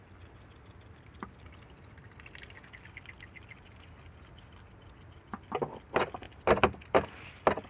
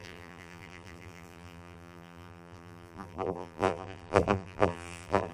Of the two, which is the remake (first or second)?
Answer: second